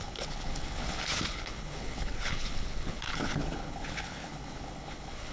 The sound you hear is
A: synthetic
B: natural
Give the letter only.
A